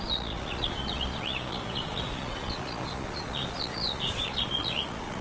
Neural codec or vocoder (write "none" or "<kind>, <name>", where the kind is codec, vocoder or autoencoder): vocoder, Vocos